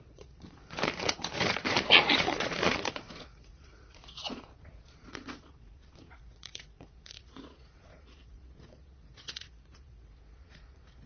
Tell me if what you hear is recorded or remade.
remade